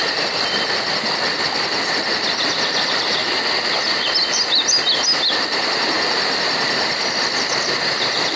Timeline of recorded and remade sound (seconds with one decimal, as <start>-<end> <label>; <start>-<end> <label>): 0.0-8.4 recorded